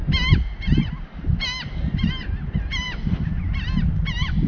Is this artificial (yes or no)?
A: no